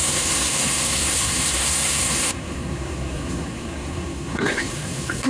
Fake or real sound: fake